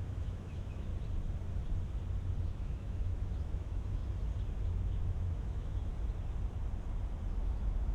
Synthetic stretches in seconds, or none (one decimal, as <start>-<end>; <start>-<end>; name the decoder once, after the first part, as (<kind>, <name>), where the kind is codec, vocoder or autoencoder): 0.0-0.9 (autoencoder, DAC-VAE); 2.4-4.0; 4.7-5.9; 7.4-7.9